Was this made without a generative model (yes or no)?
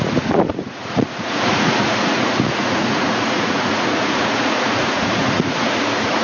no